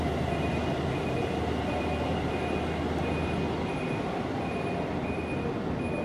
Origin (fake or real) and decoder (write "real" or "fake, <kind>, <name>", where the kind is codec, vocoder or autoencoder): real